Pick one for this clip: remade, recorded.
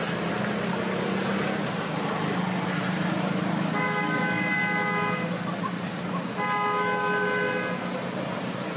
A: recorded